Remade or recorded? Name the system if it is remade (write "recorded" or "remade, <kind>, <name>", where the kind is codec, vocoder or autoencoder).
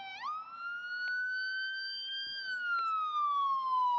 recorded